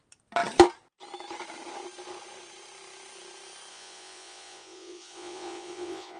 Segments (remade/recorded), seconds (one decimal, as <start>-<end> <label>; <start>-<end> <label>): 0.0-3.7 recorded; 3.7-6.2 remade